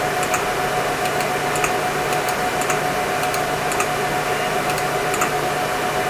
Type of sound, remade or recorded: recorded